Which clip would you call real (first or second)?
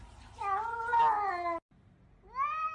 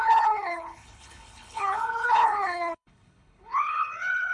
first